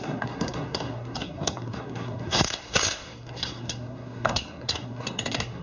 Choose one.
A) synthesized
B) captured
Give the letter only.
A